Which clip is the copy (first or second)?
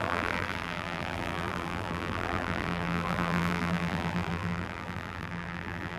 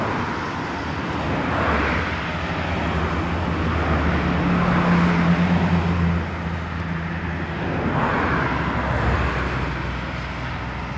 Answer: first